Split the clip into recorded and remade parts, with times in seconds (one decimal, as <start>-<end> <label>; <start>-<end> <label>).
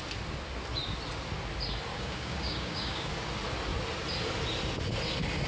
0.0-1.9 recorded; 1.9-3.1 remade; 3.1-5.5 recorded